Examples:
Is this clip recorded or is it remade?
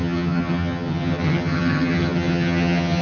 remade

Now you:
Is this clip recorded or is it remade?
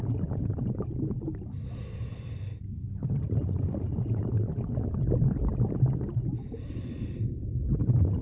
recorded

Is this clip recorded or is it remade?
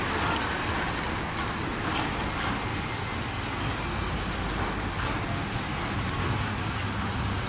recorded